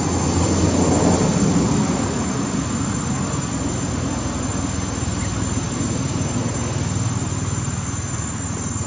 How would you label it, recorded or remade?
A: recorded